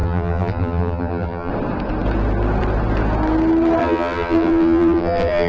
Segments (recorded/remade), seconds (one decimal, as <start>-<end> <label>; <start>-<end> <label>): 0.0-1.5 remade; 1.5-3.8 recorded; 3.8-5.5 remade